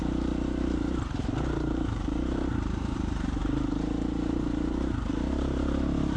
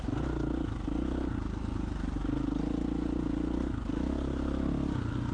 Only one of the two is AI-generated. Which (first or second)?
first